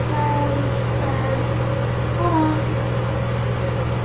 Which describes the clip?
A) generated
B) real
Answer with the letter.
B